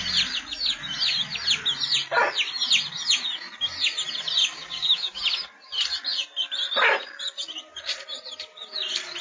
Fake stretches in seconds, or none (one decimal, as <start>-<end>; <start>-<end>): 4.4-5.2